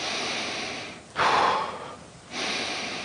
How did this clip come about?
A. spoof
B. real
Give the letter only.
B